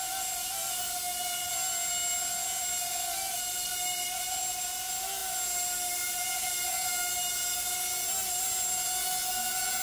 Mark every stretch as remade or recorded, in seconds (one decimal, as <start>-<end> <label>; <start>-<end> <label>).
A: 0.0-9.8 recorded